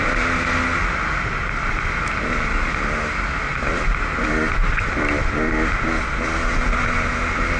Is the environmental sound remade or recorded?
recorded